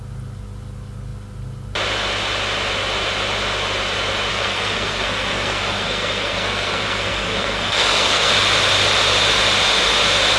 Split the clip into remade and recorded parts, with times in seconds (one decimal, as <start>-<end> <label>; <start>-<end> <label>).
0.0-4.3 recorded; 4.3-8.3 remade; 8.3-10.4 recorded